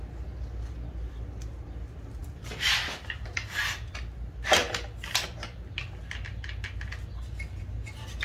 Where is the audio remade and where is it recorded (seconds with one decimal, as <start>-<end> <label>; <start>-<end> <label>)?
0.0-2.2 recorded; 2.2-3.6 remade; 3.6-8.2 recorded